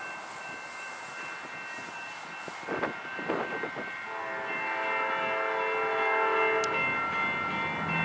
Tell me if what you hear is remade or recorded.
recorded